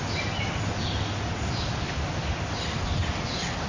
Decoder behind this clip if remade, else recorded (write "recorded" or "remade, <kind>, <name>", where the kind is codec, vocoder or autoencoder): recorded